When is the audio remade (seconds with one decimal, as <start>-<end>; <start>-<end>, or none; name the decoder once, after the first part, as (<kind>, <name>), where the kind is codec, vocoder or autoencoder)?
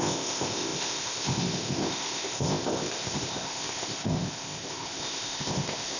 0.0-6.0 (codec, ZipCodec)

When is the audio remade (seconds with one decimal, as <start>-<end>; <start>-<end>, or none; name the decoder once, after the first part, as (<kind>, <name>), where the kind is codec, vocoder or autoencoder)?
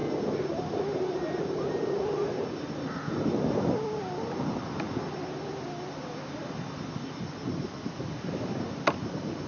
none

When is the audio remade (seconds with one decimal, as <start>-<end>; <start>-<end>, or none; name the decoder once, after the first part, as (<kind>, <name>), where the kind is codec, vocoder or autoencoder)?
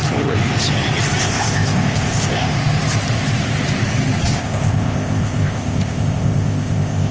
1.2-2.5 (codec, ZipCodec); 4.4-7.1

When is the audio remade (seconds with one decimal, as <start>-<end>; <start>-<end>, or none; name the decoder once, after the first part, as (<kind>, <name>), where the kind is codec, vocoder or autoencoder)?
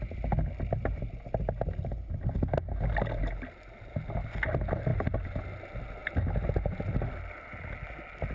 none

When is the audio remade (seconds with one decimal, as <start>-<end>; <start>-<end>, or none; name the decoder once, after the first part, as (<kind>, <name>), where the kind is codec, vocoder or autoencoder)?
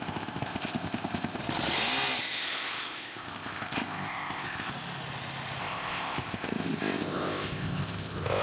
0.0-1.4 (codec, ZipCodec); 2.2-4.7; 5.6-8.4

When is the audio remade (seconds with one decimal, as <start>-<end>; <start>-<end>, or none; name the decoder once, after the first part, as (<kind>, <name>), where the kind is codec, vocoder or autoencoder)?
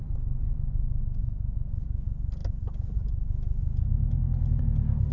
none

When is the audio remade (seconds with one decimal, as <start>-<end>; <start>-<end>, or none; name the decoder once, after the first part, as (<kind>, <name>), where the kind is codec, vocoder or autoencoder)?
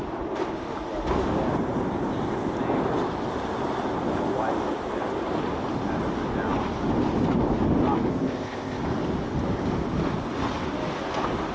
8.1-8.8 (codec, ZipCodec)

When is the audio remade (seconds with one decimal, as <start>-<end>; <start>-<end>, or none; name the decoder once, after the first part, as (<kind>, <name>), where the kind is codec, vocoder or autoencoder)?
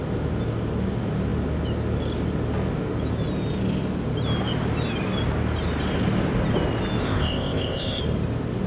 7.0-8.0 (codec, ZipCodec)